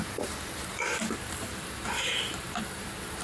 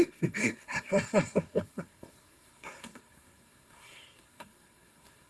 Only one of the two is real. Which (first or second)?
first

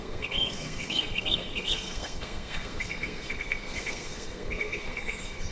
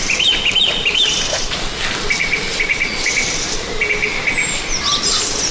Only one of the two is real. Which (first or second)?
second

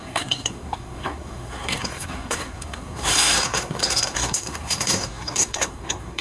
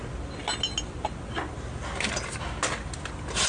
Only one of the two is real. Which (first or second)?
second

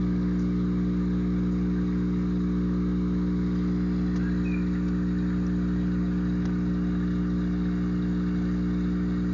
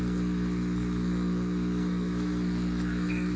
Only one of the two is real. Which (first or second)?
first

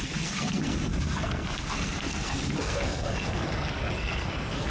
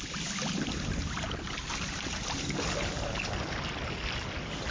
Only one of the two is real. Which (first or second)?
second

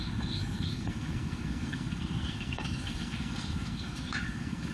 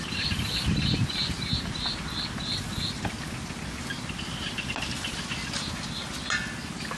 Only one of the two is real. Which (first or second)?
second